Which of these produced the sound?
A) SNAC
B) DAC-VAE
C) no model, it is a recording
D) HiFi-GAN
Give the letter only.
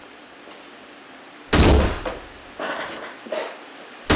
C